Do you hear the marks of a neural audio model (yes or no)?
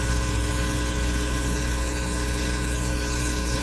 yes